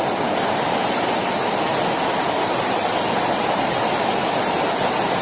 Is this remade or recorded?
recorded